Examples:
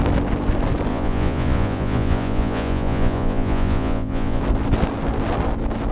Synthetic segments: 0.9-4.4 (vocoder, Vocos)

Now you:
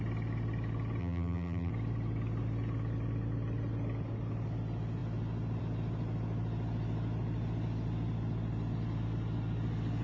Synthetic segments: 1.0-1.7 (vocoder, BigVGAN v2)

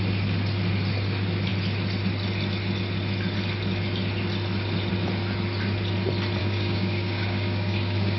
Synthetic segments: 6.4-8.2 (codec, DAC)